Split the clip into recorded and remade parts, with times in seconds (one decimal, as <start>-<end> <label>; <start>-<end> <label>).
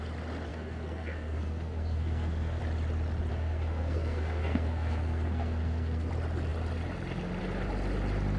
0.0-0.5 recorded; 0.5-2.6 remade; 2.6-3.3 recorded; 3.3-6.1 remade; 6.1-8.4 recorded